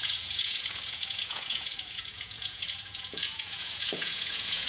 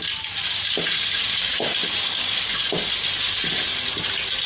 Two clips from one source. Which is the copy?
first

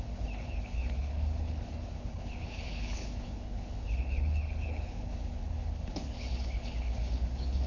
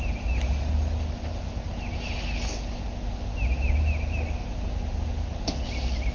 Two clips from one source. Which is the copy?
first